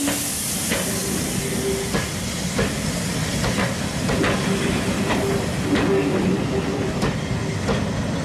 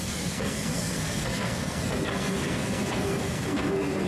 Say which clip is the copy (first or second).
second